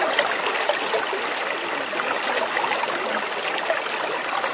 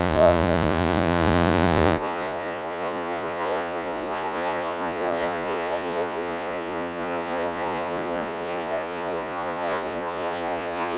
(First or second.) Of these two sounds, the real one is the first